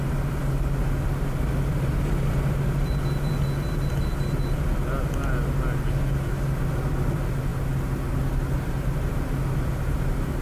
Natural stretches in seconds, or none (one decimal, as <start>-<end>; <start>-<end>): 0.0-10.4